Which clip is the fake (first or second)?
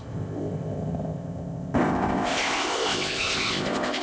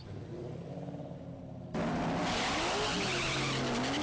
first